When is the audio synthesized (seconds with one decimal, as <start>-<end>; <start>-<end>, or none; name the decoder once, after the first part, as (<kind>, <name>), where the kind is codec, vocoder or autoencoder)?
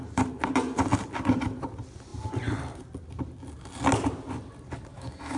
4.9-5.4 (autoencoder, DAC-VAE)